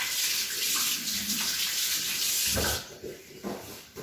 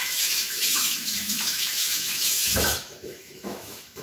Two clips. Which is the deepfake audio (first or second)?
second